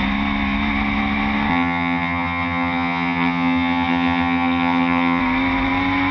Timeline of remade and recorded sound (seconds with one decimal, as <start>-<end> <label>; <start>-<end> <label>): 0.0-1.5 recorded; 1.5-5.2 remade; 5.2-6.1 recorded